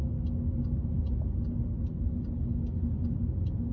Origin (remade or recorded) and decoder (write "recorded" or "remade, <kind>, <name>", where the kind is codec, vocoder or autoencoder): recorded